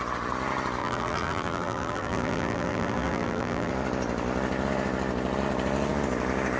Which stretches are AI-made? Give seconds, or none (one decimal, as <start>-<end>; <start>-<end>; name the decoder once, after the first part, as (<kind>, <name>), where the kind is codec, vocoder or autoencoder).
0.8-3.7 (vocoder, BigVGAN v2)